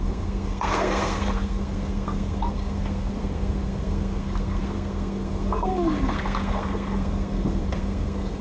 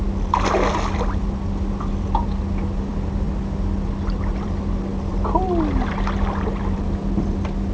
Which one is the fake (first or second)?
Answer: first